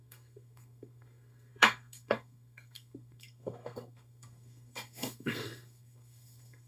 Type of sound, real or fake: fake